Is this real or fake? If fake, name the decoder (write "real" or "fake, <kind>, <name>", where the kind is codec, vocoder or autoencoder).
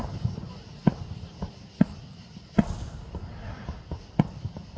real